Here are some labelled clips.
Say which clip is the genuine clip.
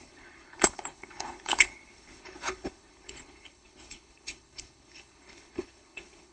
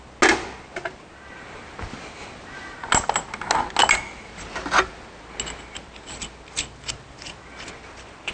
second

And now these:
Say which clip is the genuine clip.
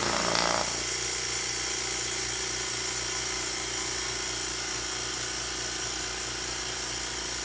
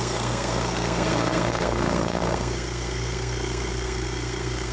first